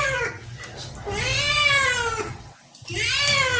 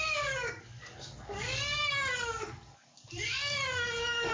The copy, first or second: second